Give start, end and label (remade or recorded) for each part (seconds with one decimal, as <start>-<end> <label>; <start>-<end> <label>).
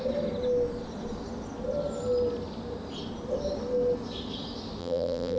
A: 0.0-4.8 recorded; 4.8-5.4 remade